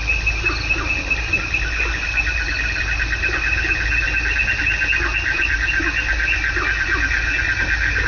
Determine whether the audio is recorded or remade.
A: recorded